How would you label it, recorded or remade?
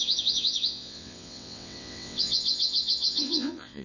remade